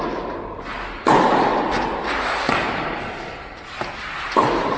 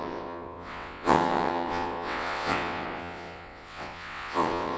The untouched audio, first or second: first